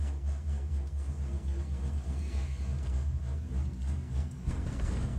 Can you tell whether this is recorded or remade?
remade